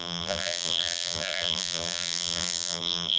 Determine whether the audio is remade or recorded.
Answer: remade